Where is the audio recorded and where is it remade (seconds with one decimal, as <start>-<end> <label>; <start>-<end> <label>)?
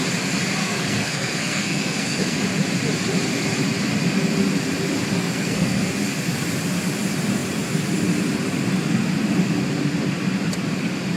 0.0-0.6 recorded; 0.6-2.4 remade; 2.4-5.2 recorded; 5.2-5.9 remade; 5.9-11.2 recorded